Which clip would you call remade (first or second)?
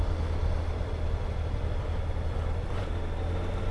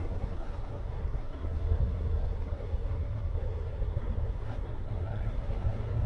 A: second